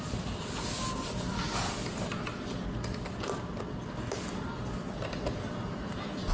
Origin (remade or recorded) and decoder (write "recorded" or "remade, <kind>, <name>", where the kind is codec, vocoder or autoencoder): recorded